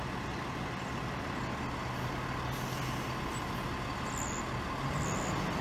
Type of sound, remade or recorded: recorded